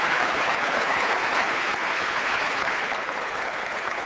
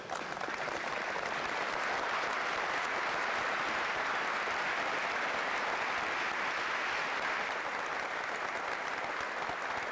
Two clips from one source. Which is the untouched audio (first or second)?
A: second